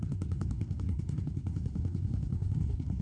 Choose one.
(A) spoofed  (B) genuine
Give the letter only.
A